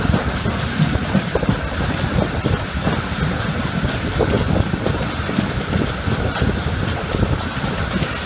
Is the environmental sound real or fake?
real